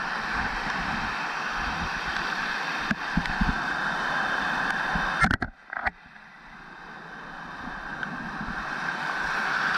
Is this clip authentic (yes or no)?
yes